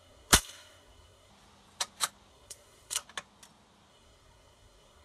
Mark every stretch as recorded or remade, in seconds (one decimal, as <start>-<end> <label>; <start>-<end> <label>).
0.0-1.3 remade; 1.3-2.3 recorded; 2.3-3.0 remade; 3.0-3.9 recorded; 3.9-5.0 remade